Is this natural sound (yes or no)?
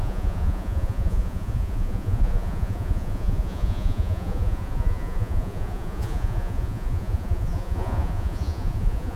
no